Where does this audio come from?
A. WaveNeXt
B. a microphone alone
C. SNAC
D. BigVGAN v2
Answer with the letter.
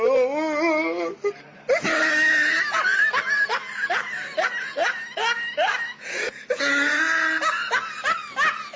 B